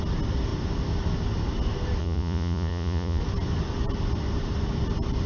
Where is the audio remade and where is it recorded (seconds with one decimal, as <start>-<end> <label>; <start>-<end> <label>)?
0.0-2.0 recorded; 2.0-3.2 remade; 3.2-5.3 recorded